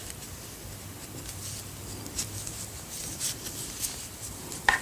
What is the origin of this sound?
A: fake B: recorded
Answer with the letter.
A